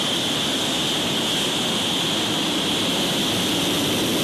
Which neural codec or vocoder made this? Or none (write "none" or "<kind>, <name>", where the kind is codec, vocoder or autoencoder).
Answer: none